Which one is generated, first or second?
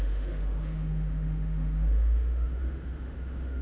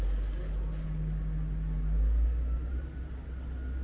first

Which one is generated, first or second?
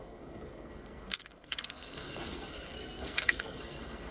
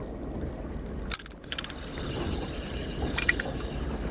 first